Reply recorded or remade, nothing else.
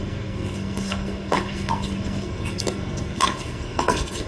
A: remade